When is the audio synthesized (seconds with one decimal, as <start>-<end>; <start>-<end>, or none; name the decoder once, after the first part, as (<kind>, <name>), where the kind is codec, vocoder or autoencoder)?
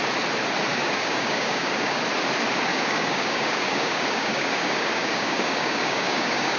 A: 0.7-2.0 (codec, DAC); 2.7-6.6